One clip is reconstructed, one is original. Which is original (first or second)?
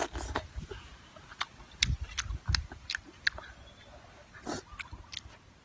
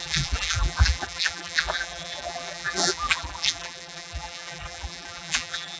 first